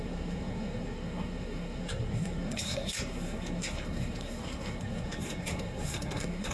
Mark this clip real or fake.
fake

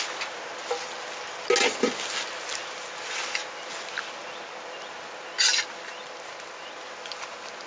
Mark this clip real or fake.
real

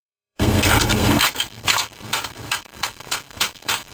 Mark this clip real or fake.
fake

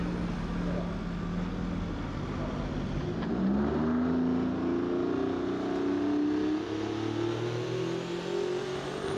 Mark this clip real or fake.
real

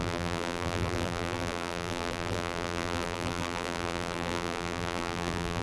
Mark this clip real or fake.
fake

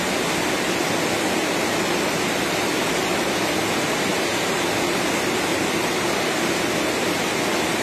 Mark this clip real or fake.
real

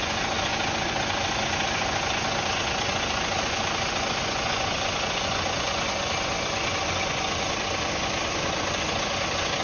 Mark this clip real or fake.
fake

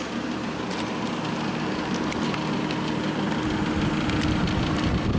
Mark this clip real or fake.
real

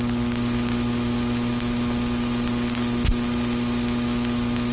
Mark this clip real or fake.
real